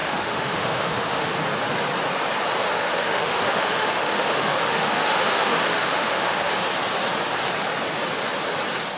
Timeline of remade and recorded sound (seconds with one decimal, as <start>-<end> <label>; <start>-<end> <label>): 0.0-1.3 remade; 1.3-2.7 recorded; 2.7-6.6 remade; 6.6-9.0 recorded